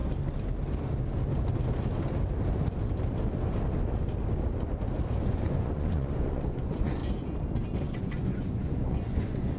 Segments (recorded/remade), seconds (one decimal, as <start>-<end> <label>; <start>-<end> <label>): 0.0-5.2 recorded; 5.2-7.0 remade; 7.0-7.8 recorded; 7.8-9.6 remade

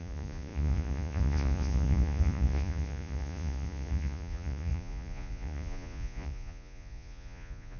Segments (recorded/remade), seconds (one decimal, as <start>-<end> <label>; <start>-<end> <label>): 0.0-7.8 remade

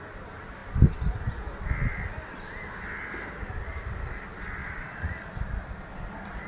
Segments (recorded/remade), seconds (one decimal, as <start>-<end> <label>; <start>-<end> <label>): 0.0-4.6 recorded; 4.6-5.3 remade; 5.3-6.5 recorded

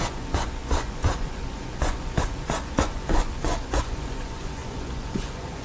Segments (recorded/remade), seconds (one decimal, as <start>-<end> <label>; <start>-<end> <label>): 0.0-5.6 remade

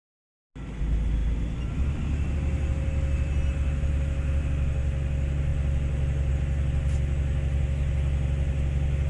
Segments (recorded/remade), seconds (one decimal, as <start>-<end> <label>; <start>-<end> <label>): 0.0-9.1 recorded